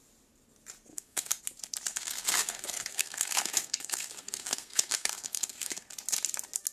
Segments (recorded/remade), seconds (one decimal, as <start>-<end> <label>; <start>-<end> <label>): 0.0-0.9 recorded; 0.9-1.4 remade; 1.4-1.9 recorded; 1.9-5.9 remade; 5.9-6.7 recorded